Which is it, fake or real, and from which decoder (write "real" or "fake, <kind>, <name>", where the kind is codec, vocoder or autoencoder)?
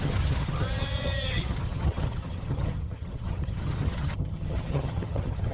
fake, vocoder, HiFi-GAN